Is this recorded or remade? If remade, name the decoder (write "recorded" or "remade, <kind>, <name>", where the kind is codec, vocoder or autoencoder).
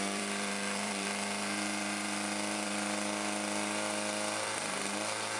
remade, vocoder, BigVGAN v2